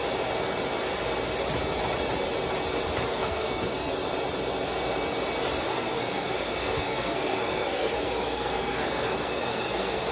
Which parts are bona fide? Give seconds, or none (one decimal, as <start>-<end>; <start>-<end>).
0.0-3.1; 3.9-5.7